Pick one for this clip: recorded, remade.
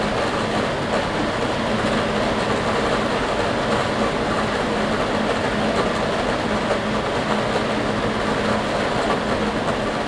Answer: recorded